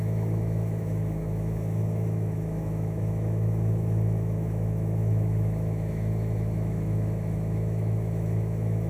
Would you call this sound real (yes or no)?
no